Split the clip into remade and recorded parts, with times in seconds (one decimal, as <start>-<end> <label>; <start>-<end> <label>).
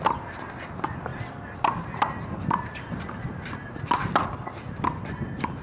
0.0-5.6 recorded